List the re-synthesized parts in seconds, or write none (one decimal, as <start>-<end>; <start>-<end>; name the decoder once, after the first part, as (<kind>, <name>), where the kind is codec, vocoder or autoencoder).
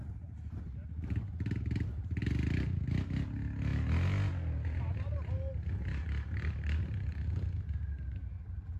none